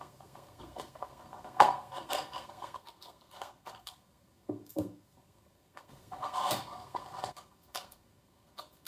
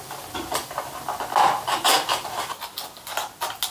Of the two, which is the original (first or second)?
second